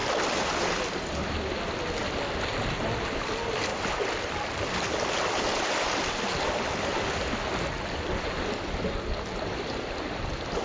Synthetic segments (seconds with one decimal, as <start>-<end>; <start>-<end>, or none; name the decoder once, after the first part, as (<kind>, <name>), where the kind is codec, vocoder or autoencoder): none